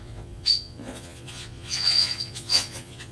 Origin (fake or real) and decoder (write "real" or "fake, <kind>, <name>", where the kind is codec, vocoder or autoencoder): fake, vocoder, Vocos